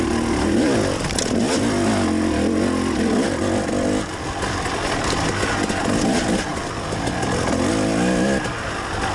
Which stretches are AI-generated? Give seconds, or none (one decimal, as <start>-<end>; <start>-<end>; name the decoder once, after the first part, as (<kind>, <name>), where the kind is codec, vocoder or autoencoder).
none